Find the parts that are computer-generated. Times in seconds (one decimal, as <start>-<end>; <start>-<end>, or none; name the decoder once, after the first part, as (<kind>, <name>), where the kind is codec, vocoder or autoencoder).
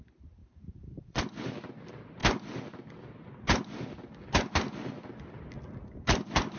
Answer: 0.4-1.2 (vocoder, BigVGAN v2)